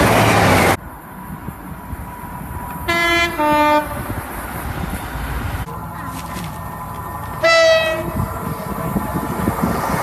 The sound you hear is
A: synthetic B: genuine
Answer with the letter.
B